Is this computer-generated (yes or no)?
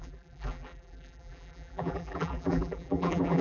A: yes